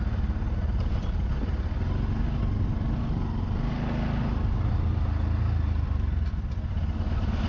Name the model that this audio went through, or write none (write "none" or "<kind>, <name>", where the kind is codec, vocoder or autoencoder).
none